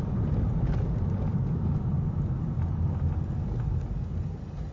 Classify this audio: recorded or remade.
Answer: recorded